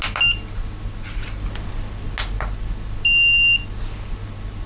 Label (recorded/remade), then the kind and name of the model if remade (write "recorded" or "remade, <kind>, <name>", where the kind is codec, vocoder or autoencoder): recorded